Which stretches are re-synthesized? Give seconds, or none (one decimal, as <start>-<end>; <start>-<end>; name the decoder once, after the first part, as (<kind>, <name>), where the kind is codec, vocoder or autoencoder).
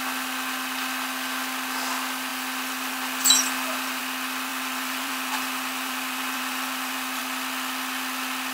2.3-4.0 (vocoder, BigVGAN v2); 4.5-7.2